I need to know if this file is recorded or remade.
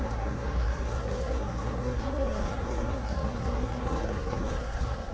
remade